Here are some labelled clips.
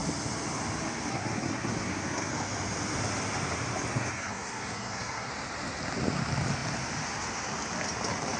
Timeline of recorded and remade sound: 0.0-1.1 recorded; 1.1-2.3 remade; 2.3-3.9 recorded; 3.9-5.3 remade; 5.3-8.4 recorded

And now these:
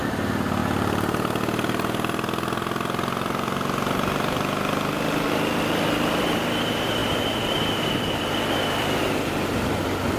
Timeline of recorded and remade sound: 0.0-10.2 recorded

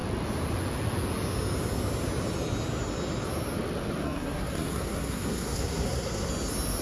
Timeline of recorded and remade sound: 0.0-4.0 recorded; 4.0-6.3 remade; 6.3-6.8 recorded